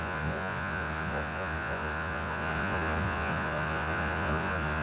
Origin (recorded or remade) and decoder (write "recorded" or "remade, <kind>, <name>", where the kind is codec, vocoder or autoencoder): remade, vocoder, Vocos